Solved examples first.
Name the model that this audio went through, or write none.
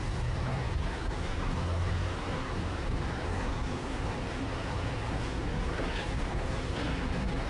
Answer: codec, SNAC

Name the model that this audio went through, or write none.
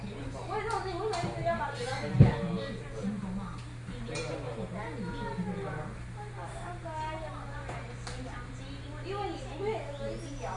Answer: none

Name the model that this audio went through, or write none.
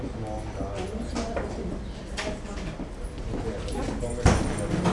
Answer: none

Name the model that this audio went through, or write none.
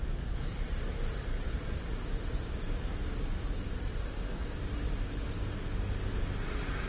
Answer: none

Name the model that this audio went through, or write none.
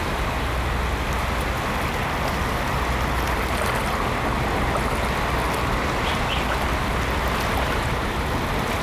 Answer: none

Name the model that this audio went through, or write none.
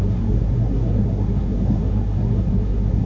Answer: codec, SNAC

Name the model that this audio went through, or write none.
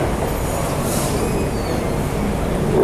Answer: none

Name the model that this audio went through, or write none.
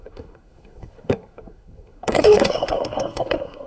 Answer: codec, SNAC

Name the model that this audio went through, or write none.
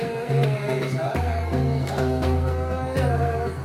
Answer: codec, SNAC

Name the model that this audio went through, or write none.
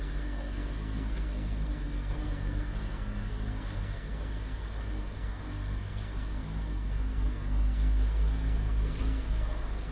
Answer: codec, SNAC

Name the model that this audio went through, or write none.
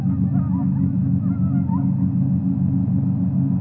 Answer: none